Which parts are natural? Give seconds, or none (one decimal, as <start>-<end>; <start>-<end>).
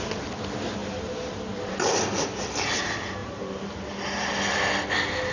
0.0-0.8; 1.4-3.2; 4.3-5.3